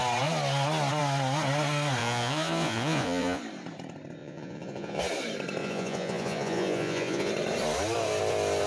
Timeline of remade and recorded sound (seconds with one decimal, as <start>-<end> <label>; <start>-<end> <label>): 0.0-2.0 recorded; 2.0-3.4 remade; 3.4-4.2 recorded; 4.2-5.0 remade; 5.0-5.6 recorded; 5.6-7.3 remade; 7.3-8.7 recorded